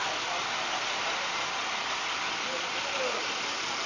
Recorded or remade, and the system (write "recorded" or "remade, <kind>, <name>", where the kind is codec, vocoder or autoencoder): recorded